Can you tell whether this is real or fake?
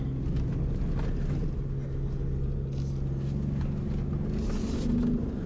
real